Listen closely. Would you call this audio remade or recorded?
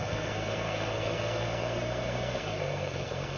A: remade